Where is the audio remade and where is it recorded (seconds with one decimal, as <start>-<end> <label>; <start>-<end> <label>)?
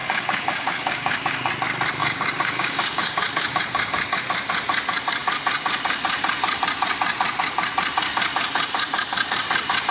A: 0.0-1.5 remade; 1.5-2.0 recorded; 2.0-4.2 remade; 4.2-9.9 recorded